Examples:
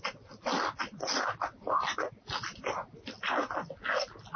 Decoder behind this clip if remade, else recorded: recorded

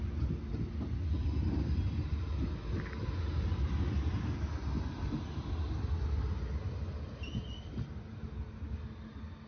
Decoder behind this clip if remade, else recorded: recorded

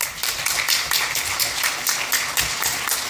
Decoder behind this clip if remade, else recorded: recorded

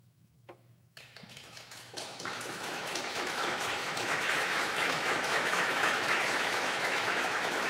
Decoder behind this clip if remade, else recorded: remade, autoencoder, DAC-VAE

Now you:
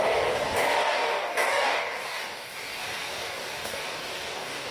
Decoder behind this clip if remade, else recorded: remade, codec, DAC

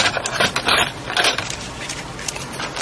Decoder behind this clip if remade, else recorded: recorded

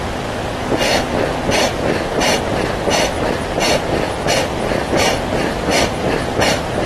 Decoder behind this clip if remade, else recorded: recorded